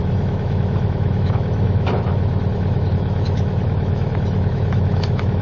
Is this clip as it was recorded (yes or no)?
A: no